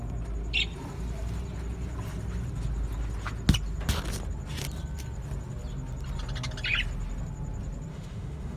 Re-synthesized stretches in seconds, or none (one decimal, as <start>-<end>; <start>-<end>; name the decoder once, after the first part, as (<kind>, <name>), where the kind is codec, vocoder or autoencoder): 7.9-8.6 (autoencoder, DAC-VAE)

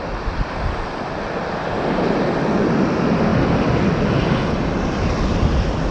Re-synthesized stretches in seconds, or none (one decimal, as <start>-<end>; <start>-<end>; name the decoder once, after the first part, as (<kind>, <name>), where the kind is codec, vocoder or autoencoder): none

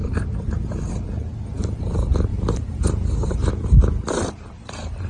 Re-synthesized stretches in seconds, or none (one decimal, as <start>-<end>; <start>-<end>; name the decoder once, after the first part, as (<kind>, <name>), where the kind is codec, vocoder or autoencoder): 2.3-3.5 (vocoder, BigVGAN v2)

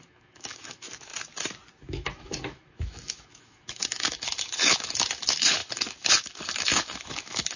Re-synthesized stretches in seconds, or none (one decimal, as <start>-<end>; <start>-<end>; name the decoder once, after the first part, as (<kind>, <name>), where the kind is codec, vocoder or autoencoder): 0.0-1.1 (autoencoder, DAC-VAE); 1.8-7.6